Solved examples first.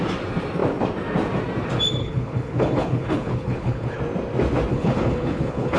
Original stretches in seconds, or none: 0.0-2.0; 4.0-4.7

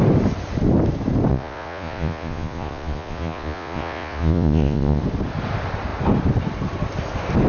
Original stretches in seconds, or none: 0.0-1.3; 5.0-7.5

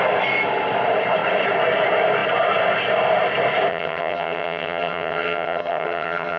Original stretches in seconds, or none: 0.0-3.7